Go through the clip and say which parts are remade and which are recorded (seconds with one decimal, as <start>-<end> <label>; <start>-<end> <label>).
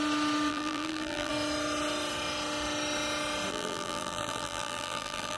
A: 0.0-0.5 recorded; 0.5-1.3 remade; 1.3-3.5 recorded; 3.5-5.4 remade